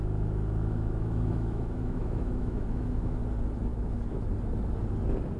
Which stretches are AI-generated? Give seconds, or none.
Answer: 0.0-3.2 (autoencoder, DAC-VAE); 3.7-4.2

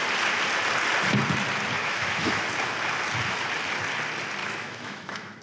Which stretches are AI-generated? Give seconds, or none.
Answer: 1.8-2.5 (autoencoder, DAC-VAE); 4.4-5.4